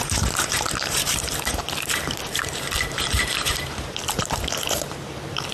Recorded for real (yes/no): no